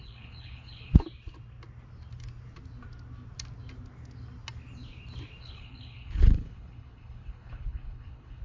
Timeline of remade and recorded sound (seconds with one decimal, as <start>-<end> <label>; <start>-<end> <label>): 0.0-0.9 remade; 0.9-5.4 recorded; 5.4-8.4 remade